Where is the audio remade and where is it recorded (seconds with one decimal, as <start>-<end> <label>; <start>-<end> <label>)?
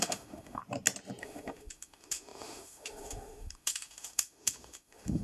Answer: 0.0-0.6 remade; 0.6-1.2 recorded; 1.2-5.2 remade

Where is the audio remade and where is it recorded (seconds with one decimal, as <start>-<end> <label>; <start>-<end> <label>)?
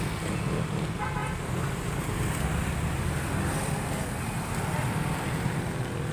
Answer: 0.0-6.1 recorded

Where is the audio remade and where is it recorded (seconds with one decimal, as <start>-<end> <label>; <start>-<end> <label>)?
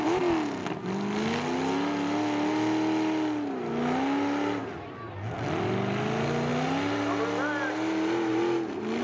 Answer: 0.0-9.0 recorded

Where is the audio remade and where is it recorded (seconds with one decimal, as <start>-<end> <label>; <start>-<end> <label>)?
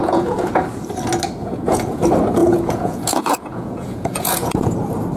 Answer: 0.0-0.6 remade; 0.6-1.4 recorded; 1.4-2.0 remade; 2.0-2.4 recorded; 2.4-4.7 remade; 4.7-5.2 recorded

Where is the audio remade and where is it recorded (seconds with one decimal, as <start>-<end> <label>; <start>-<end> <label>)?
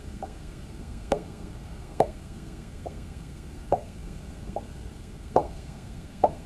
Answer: 0.0-6.5 remade